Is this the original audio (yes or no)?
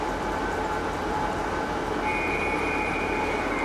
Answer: yes